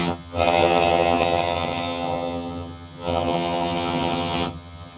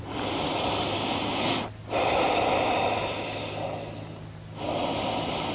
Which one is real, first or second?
second